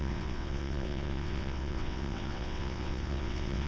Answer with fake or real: fake